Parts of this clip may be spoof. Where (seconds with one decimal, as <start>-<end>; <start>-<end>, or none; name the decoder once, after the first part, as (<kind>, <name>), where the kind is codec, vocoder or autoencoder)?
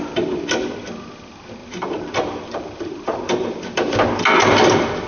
1.6-4.2 (vocoder, BigVGAN v2)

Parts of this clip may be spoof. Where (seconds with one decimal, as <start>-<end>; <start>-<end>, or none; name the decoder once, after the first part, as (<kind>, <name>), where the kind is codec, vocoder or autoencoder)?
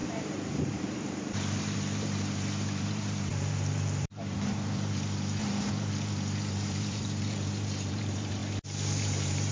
0.0-8.4 (vocoder, BigVGAN v2); 9.0-9.5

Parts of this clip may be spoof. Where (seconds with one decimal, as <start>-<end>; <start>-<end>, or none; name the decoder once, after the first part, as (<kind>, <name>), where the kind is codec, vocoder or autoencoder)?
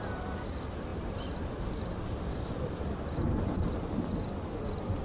0.9-3.9 (vocoder, BigVGAN v2)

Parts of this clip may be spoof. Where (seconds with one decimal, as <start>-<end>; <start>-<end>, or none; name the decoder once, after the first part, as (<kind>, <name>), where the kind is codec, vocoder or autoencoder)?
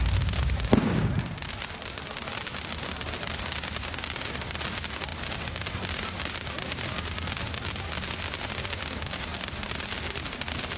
none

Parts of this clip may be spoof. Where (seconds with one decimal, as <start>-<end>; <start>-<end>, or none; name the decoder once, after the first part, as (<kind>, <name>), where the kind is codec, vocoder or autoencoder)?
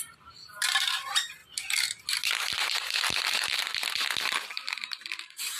0.0-1.4 (vocoder, BigVGAN v2); 3.3-3.7; 4.3-5.6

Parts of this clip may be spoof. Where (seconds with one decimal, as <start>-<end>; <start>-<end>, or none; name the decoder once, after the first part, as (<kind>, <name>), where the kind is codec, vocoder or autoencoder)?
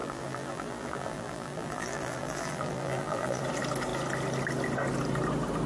0.0-3.4 (vocoder, BigVGAN v2)